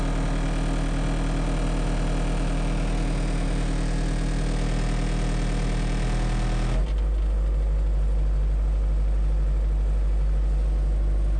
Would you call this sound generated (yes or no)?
no